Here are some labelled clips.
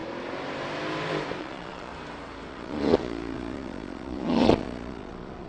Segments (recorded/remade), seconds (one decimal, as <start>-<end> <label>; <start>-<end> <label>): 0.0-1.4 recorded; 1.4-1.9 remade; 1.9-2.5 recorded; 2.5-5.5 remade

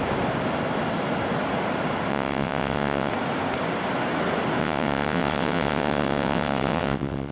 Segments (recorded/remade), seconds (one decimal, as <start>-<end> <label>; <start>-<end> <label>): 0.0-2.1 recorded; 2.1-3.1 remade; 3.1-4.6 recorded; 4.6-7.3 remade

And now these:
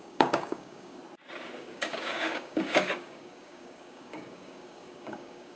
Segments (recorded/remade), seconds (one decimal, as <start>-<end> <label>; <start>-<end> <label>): 0.0-1.0 remade; 1.0-1.6 recorded; 1.6-5.6 remade

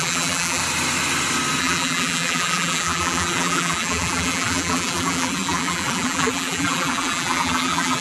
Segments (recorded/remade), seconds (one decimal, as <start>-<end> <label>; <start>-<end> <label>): 0.0-0.6 remade; 0.6-1.6 recorded; 1.6-8.0 remade

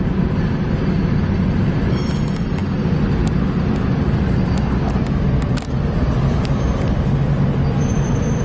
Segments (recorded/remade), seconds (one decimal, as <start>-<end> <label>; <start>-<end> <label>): 0.0-8.4 recorded

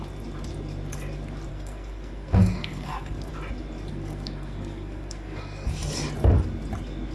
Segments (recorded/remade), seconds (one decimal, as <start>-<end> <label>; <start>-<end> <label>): 0.0-1.5 recorded; 1.5-3.3 remade; 3.3-3.9 recorded; 3.9-5.7 remade; 5.7-7.1 recorded

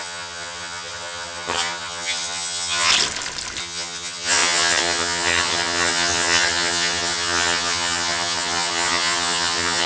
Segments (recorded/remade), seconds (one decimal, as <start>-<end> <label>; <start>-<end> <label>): 0.0-2.9 remade; 2.9-3.6 recorded; 3.6-9.9 remade